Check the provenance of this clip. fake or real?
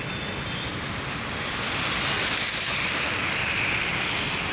real